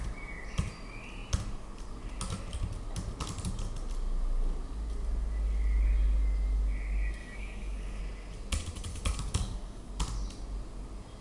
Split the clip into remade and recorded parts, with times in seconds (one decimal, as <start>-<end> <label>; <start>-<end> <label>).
0.0-7.2 recorded; 7.2-8.0 remade; 8.0-8.9 recorded; 8.9-9.9 remade; 9.9-11.2 recorded